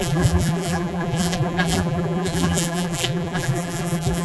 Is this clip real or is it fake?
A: fake